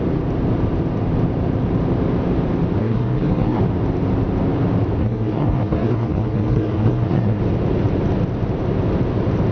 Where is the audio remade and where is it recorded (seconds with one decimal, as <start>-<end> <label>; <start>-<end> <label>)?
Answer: 0.0-2.8 recorded; 2.8-3.6 remade; 3.6-5.0 recorded; 5.0-7.4 remade; 7.4-9.5 recorded